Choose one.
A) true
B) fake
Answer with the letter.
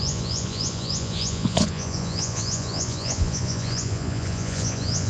B